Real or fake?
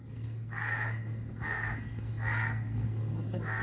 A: fake